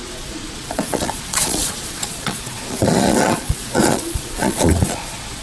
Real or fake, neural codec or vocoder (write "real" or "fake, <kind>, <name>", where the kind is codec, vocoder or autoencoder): fake, vocoder, Vocos